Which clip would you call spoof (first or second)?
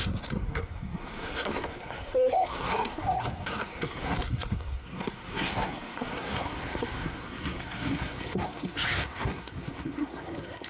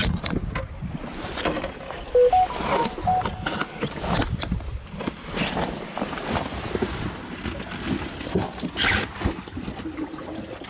first